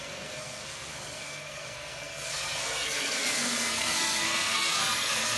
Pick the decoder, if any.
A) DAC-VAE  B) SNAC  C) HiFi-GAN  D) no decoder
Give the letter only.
B